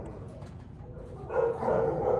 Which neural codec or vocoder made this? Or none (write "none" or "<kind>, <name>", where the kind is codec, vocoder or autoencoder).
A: vocoder, Vocos